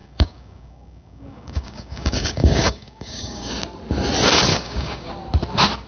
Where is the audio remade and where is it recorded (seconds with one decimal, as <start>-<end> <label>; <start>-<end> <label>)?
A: 0.0-3.5 remade; 3.5-4.5 recorded; 4.5-5.1 remade; 5.1-5.9 recorded